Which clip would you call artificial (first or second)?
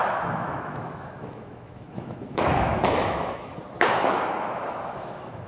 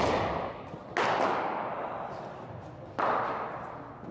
first